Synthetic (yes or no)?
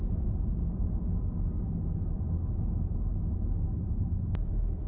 no